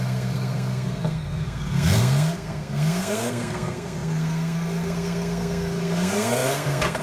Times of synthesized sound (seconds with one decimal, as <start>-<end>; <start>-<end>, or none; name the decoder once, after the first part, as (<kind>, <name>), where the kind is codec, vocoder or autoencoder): 0.0-7.0 (codec, SNAC)